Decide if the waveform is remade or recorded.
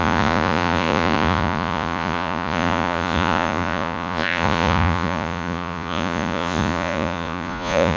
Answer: remade